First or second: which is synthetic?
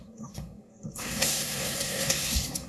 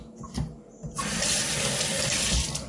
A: first